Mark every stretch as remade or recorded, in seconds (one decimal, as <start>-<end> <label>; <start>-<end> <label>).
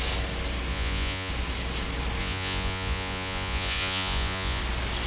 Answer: 0.0-0.7 recorded; 0.7-1.3 remade; 1.3-2.2 recorded; 2.2-4.6 remade; 4.6-5.1 recorded